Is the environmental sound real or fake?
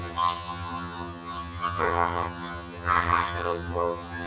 fake